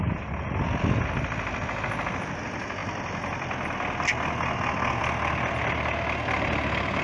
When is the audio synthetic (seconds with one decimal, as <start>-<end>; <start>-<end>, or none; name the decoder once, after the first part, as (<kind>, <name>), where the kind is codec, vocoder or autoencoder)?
none